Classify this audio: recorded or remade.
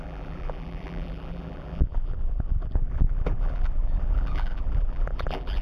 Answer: remade